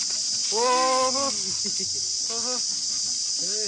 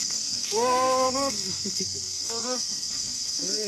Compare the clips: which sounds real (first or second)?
first